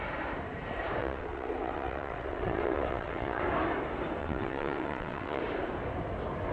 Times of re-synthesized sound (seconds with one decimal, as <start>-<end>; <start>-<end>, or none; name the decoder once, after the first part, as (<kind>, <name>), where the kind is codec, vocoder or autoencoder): 1.0-3.4 (vocoder, WaveNeXt); 4.2-5.4